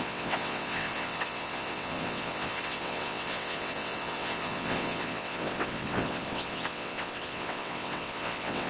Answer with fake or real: fake